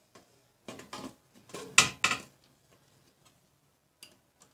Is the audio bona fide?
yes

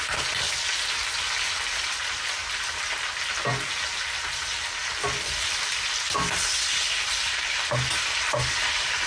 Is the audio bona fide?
yes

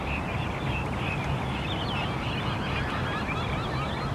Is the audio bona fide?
yes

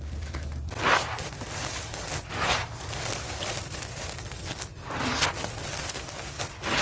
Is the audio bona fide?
yes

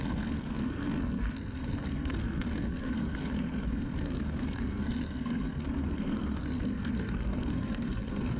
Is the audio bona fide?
no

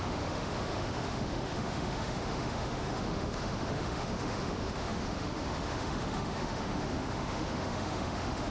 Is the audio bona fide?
no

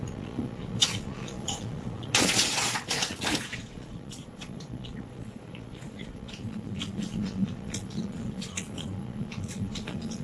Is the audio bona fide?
no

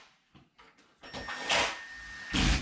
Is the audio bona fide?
yes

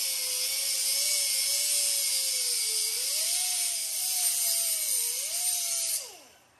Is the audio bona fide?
yes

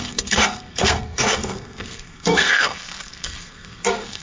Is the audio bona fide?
no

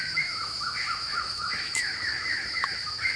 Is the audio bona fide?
no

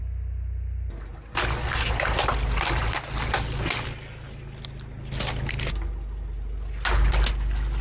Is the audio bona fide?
yes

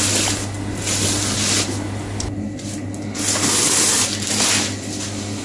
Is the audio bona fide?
yes